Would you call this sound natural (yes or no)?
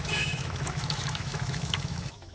no